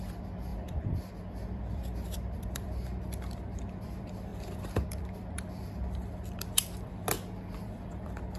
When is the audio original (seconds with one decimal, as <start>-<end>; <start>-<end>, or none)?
7.0-7.6